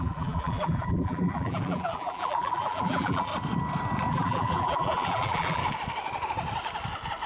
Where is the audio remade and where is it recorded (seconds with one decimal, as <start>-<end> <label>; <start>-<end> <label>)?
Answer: 0.0-3.3 remade; 3.3-4.1 recorded; 4.1-5.6 remade; 5.6-7.3 recorded